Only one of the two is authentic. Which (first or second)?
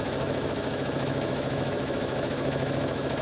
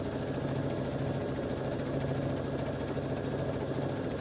second